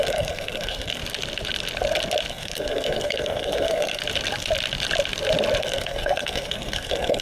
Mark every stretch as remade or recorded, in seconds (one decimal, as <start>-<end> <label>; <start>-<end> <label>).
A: 0.0-1.0 remade; 1.0-2.3 recorded; 2.3-4.0 remade; 4.0-5.6 recorded; 5.6-7.2 remade